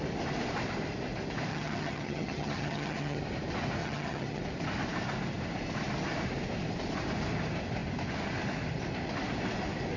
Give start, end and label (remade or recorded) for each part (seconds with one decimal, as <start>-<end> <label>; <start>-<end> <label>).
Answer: 0.0-1.5 recorded; 1.5-3.2 remade; 3.2-3.8 recorded; 3.8-4.4 remade; 4.4-10.0 recorded